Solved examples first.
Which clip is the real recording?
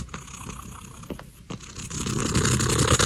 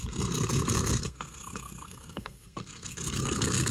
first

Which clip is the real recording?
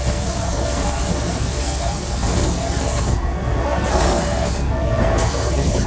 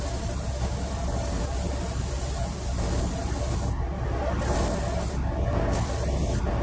second